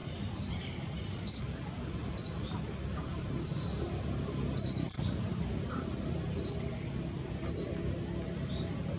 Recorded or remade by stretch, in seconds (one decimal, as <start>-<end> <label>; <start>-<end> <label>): 0.0-9.0 recorded